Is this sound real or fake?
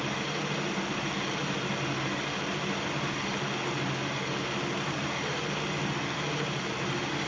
real